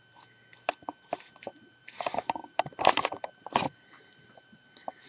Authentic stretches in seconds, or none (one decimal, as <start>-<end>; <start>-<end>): 0.0-1.8